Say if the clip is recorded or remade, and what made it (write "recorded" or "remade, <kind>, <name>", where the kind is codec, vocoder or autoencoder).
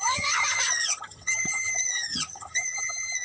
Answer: remade, vocoder, HiFi-GAN